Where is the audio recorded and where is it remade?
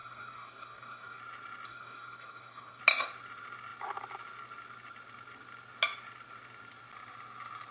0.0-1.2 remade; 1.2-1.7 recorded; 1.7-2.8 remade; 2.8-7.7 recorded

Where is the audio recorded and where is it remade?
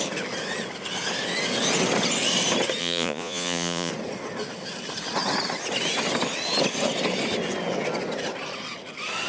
0.0-2.8 recorded; 2.8-3.9 remade; 3.9-9.3 recorded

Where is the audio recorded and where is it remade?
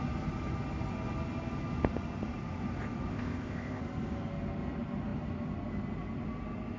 0.0-3.1 recorded; 3.1-3.8 remade; 3.8-6.8 recorded